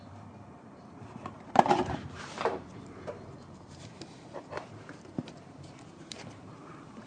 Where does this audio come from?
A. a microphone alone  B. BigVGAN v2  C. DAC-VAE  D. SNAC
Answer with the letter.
B